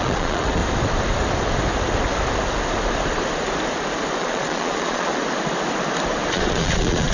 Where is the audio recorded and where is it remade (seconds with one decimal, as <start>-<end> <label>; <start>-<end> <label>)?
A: 0.0-0.6 remade; 0.6-4.2 recorded; 4.2-5.1 remade; 5.1-6.3 recorded; 6.3-7.1 remade